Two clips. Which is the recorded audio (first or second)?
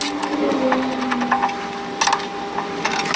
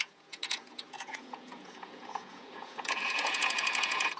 first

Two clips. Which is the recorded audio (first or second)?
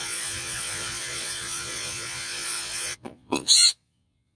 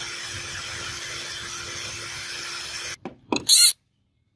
second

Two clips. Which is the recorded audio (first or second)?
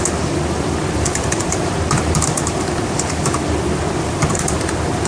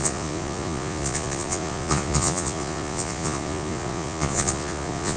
first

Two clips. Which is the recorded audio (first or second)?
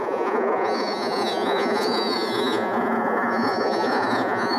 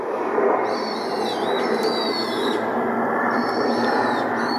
second